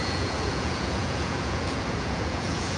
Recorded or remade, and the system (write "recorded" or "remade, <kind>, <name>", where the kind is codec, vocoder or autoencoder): remade, vocoder, Vocos